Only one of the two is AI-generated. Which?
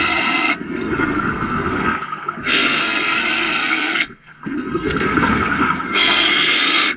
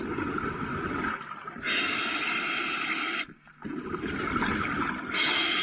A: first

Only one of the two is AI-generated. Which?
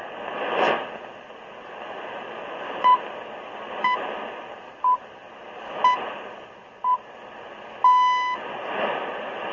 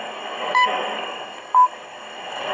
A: second